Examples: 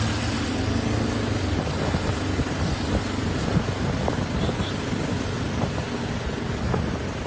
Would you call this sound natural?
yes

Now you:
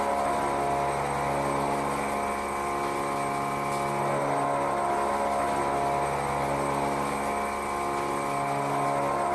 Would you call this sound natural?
yes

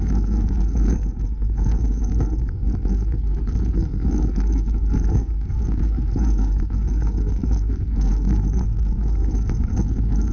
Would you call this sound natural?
no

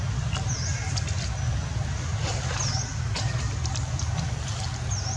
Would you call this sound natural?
yes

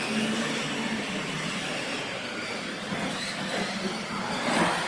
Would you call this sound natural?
yes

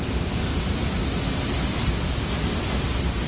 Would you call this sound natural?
yes